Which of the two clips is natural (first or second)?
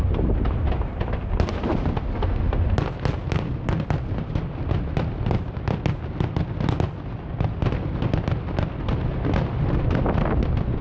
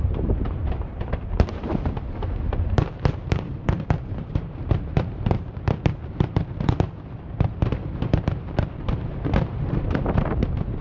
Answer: first